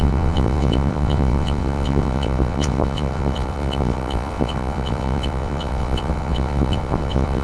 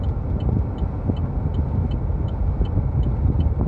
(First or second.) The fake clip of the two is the first